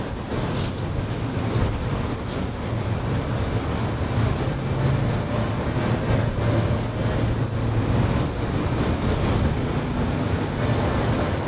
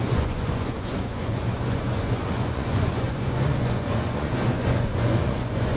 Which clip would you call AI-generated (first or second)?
second